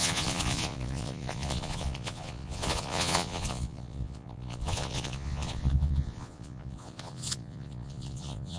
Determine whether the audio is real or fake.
fake